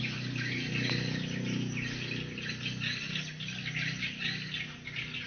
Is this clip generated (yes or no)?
no